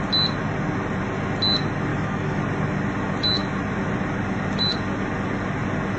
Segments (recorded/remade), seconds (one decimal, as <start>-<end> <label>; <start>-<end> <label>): 0.0-1.9 recorded; 1.9-2.4 remade; 2.4-6.0 recorded